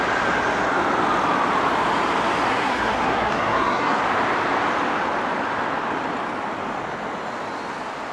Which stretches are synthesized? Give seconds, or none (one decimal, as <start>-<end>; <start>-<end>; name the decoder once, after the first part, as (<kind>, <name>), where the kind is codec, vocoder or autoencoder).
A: 2.5-4.0 (codec, SNAC)